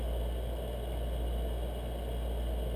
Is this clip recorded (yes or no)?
yes